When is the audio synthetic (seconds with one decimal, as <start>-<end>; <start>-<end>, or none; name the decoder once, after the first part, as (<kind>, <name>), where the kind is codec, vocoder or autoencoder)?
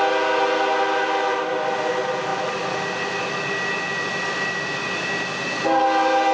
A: none